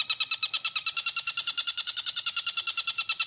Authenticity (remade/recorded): recorded